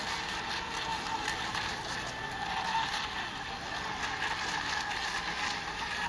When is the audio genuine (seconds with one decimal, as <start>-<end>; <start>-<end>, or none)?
0.0-6.1